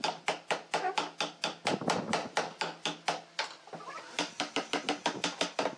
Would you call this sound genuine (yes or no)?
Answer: yes